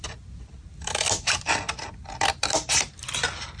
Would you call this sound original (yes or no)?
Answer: yes